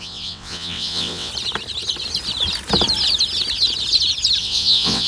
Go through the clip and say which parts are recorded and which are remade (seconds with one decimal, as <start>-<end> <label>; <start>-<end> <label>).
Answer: 0.0-1.3 remade; 1.3-4.4 recorded; 4.4-5.1 remade